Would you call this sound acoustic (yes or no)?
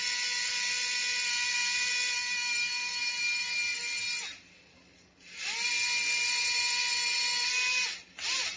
yes